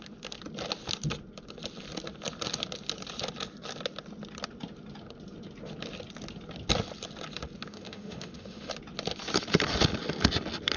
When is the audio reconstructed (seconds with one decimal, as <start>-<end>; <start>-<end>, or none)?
7.7-8.7

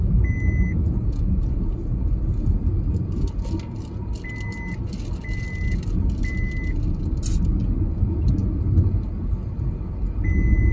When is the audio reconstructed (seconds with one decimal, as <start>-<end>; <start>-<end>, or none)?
0.7-2.0

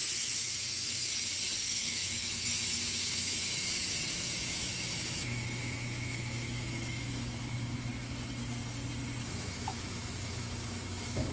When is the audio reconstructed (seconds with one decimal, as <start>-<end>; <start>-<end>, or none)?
0.0-1.1; 1.6-7.9; 9.2-11.3

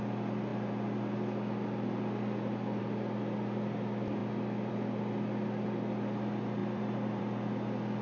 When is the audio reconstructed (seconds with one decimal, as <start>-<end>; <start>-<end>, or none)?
6.6-7.2